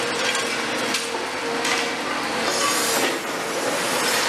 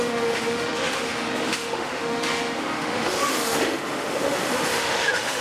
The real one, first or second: first